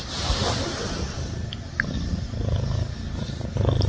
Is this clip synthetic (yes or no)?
no